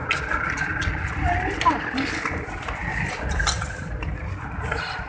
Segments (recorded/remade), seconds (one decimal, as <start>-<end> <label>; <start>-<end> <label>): 0.0-5.1 recorded

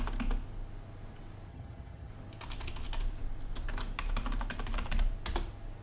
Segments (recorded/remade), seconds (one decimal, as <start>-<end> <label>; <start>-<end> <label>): 0.0-1.5 recorded; 1.5-2.1 remade; 2.1-5.8 recorded

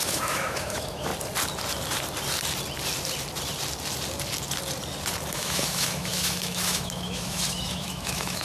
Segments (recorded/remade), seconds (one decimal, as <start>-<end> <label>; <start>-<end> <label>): 0.0-1.1 remade; 1.1-5.3 recorded; 5.3-8.4 remade

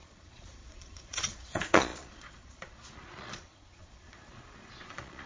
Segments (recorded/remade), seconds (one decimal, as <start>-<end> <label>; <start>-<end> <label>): 0.0-5.3 remade

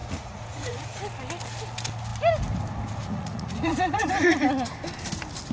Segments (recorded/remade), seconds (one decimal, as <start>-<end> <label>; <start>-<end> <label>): 0.0-1.0 remade; 1.0-3.0 recorded; 3.0-4.1 remade; 4.1-5.5 recorded

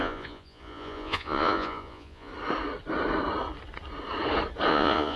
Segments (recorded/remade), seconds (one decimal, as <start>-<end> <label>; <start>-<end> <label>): 0.0-2.3 remade; 2.3-4.7 recorded; 4.7-5.2 remade

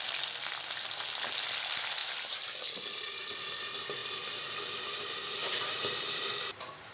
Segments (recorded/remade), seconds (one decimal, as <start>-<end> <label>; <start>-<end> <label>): 0.0-2.0 recorded; 2.0-3.4 remade; 3.4-5.4 recorded; 5.4-6.3 remade; 6.3-6.9 recorded

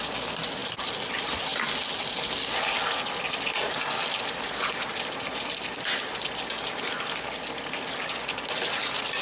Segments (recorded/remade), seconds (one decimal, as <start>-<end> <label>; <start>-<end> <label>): 0.0-9.2 recorded